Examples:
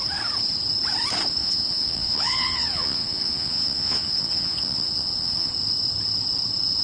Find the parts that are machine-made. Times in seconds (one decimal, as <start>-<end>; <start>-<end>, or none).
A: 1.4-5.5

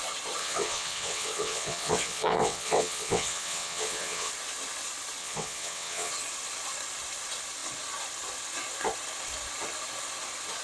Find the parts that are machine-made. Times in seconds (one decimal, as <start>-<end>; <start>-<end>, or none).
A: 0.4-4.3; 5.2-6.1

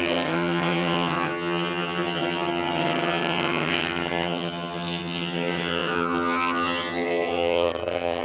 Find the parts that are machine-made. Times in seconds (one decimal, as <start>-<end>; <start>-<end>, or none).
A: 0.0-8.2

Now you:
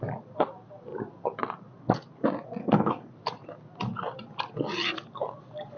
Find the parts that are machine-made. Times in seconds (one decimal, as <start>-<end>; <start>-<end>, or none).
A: 2.6-3.1